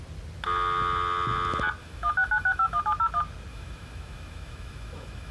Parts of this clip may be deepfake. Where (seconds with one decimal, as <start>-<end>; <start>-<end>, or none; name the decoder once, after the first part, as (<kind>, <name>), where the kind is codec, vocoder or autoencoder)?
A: 1.8-2.8 (autoencoder, DAC-VAE); 3.5-5.3